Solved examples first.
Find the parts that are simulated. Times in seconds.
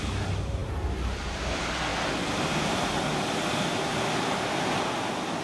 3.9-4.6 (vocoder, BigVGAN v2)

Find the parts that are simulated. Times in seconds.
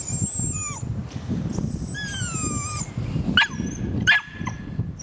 none